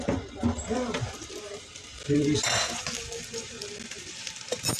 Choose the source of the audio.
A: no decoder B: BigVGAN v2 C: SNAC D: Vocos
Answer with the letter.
A